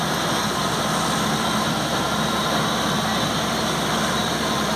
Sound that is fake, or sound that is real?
real